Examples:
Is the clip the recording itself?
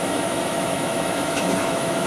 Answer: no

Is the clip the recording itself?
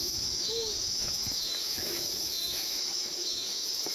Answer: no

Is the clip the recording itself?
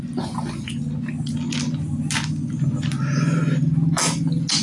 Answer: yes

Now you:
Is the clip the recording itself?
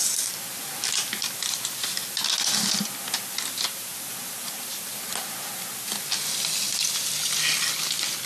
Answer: yes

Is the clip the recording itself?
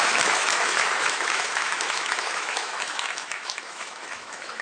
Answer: no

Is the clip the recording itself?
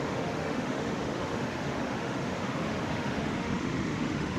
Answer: no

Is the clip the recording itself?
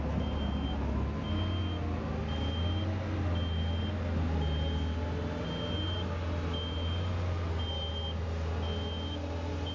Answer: yes